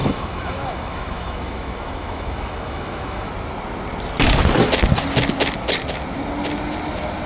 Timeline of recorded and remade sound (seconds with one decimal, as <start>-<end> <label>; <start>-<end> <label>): 0.0-3.3 remade; 3.3-7.3 recorded